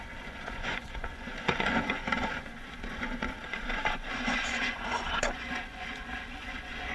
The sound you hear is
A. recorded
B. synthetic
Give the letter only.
B